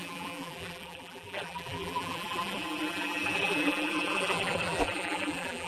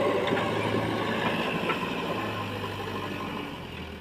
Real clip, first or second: second